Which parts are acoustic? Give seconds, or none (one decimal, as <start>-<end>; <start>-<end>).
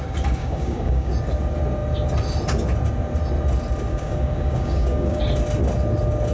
0.0-0.4; 1.1-3.9; 5.2-6.3